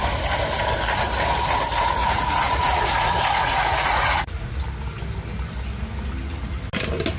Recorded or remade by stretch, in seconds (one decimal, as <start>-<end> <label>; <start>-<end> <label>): 0.0-1.7 recorded; 1.7-4.6 remade; 4.6-7.2 recorded